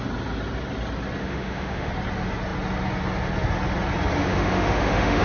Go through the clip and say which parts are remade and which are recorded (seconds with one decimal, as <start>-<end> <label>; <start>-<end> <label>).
0.0-1.2 recorded; 1.2-1.9 remade; 1.9-4.2 recorded; 4.2-5.2 remade